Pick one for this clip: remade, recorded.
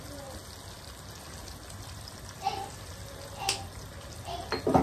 recorded